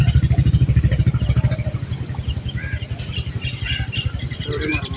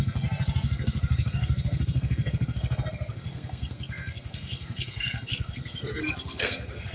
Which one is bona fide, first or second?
first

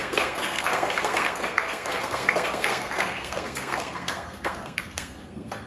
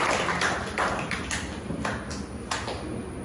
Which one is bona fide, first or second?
second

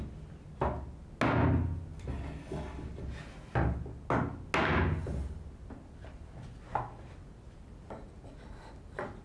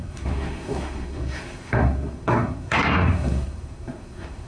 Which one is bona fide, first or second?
first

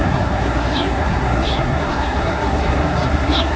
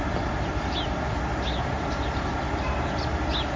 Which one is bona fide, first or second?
second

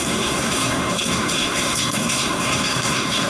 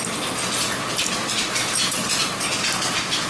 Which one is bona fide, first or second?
second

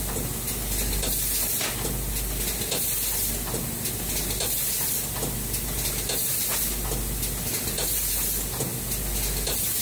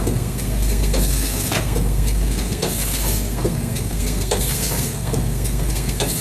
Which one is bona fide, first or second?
first